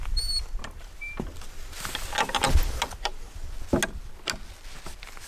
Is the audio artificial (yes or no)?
no